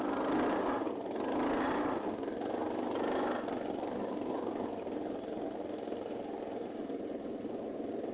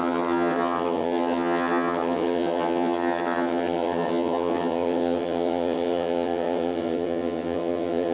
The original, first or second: first